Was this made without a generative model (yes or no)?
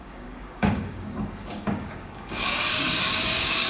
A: no